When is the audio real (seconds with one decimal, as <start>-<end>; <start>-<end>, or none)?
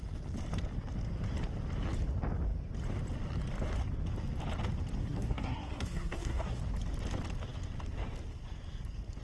0.0-5.0; 6.6-9.2